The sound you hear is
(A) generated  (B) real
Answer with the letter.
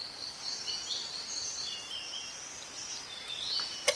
B